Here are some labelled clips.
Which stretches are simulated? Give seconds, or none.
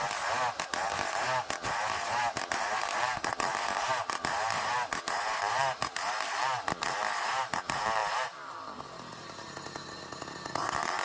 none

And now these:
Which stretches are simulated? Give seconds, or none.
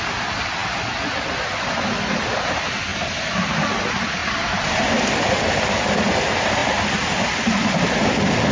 2.9-3.7; 4.2-5.8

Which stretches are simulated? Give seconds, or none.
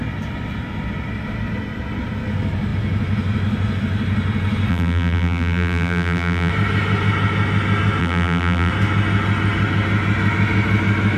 4.7-6.5; 8.0-8.7